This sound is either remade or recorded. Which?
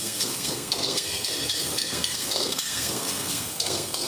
remade